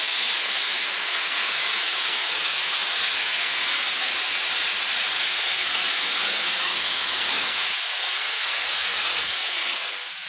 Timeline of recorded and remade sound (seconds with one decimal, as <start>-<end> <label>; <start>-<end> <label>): 0.0-4.1 remade; 4.1-5.2 recorded; 5.2-10.3 remade